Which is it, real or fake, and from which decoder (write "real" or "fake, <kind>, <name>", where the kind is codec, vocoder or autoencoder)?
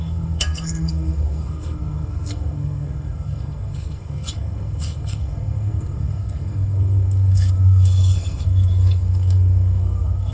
fake, codec, SNAC